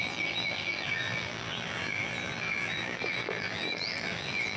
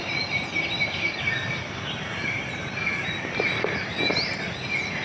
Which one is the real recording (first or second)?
second